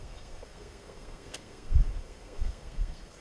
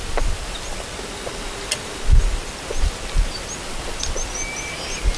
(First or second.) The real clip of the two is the second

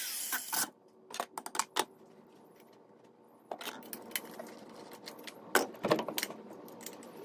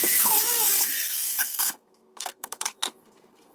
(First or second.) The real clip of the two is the first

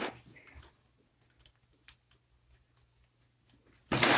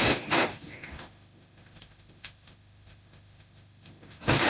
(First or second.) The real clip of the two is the first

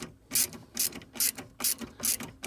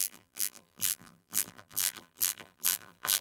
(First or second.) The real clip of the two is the first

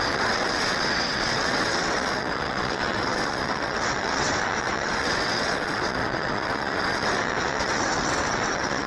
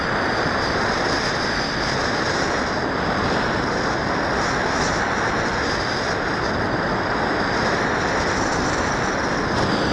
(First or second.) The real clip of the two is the second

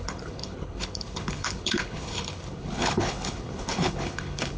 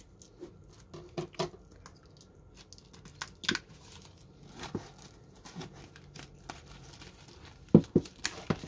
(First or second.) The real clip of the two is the second